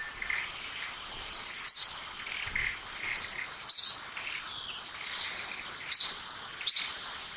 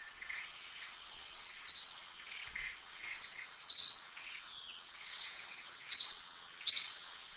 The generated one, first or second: second